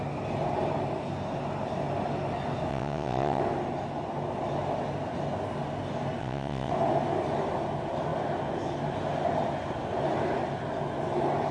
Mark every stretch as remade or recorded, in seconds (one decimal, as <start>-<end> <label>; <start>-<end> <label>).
0.0-2.7 recorded; 2.7-3.4 remade; 3.4-6.2 recorded; 6.2-6.7 remade; 6.7-11.5 recorded